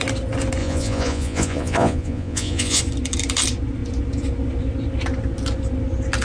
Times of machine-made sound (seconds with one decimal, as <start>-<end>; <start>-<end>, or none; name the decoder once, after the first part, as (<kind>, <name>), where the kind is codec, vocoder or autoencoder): 0.6-2.8 (vocoder, Vocos)